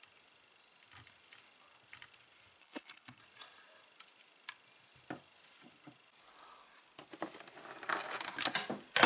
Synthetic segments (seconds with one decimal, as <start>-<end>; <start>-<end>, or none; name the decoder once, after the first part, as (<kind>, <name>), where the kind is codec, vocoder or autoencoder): 2.6-3.2 (codec, HILCodec)